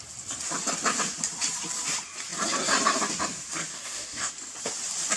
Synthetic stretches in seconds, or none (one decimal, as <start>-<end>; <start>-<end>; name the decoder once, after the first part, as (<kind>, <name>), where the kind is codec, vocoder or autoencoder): 3.7-4.3 (codec, DAC)